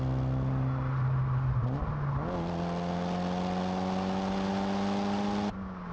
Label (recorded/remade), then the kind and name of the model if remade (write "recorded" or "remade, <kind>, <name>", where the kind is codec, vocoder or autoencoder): recorded